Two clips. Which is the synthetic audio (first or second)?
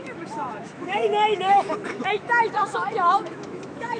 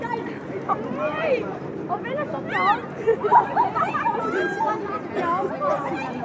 first